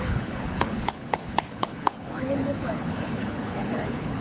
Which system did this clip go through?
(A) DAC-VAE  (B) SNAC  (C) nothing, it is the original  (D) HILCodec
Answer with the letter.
D